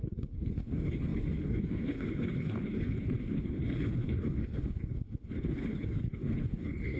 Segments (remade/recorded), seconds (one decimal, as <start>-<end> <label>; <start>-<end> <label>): 0.0-7.0 remade